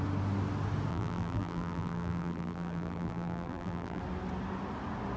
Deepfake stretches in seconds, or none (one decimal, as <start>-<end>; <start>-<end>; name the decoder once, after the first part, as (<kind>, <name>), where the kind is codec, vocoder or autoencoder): 0.9-4.0 (vocoder, BigVGAN v2)